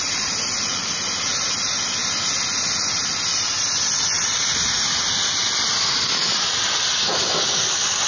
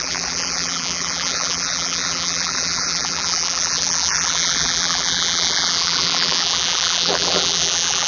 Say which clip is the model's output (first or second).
second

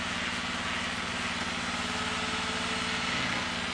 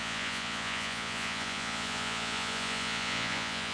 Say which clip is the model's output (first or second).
second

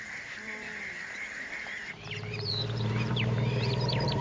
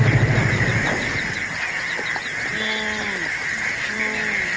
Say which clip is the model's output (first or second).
first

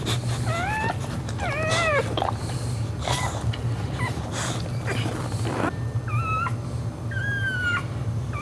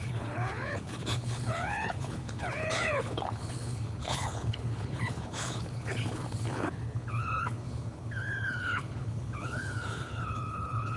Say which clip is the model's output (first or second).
second